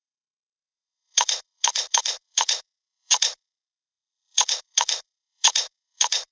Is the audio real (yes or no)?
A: no